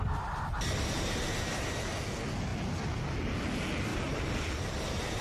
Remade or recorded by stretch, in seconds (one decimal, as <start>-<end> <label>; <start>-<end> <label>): 0.0-3.9 recorded; 3.9-4.8 remade; 4.8-5.2 recorded